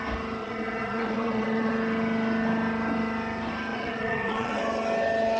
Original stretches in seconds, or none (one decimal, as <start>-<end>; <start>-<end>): 0.0-0.4; 1.7-3.7; 4.6-5.4